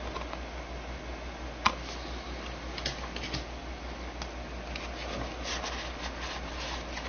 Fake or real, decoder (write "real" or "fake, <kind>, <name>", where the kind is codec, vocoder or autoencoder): real